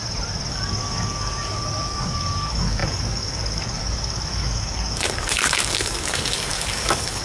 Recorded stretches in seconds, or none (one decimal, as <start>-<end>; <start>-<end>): 0.0-0.5